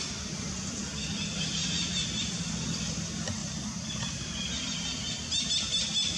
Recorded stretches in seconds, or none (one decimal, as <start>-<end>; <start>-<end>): 0.0-3.4; 4.5-6.2